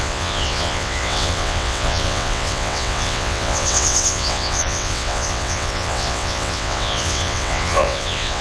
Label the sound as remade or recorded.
remade